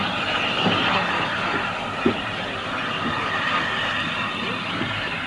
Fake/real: real